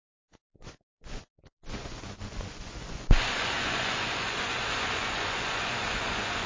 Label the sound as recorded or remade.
remade